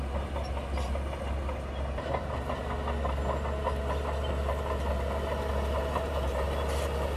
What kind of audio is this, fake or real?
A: real